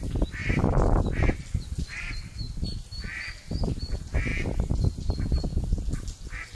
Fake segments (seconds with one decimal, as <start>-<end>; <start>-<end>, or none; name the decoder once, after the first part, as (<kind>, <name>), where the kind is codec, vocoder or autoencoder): 0.4-2.2 (vocoder, BigVGAN v2); 4.3-5.3